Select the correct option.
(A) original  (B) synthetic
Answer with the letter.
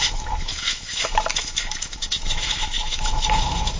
B